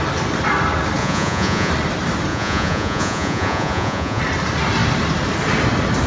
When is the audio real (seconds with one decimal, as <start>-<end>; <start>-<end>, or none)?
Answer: 0.0-1.0; 1.7-2.3; 4.2-6.1